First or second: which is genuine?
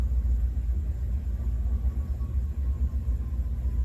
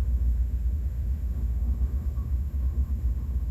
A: first